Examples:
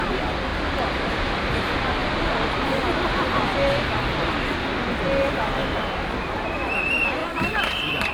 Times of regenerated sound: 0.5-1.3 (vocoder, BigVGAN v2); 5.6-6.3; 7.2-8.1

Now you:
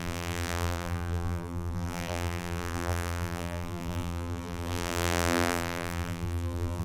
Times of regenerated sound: 0.0-6.8 (vocoder, BigVGAN v2)

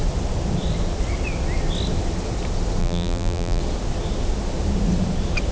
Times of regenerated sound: 2.8-3.6 (vocoder, BigVGAN v2)

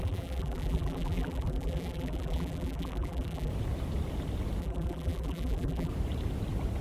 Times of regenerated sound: 0.0-3.5 (vocoder, BigVGAN v2); 4.6-5.9

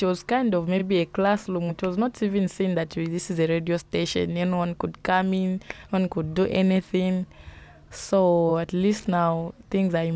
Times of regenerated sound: none

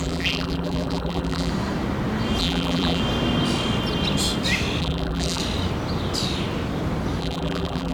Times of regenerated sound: 0.0-1.5 (vocoder, BigVGAN v2); 2.4-3.0; 4.8-5.4; 7.2-7.9